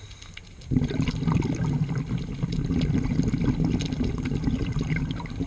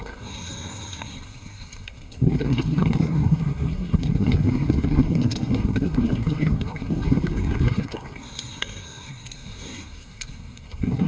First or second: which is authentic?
first